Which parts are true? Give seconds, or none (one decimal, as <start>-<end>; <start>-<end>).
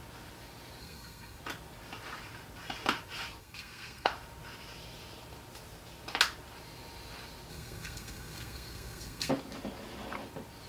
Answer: 0.0-0.8; 1.4-3.4; 4.1-7.5; 9.3-10.7